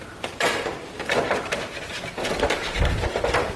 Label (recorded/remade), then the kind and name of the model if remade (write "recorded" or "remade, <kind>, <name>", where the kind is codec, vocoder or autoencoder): remade, vocoder, BigVGAN v2